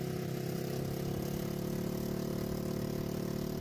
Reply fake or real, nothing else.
real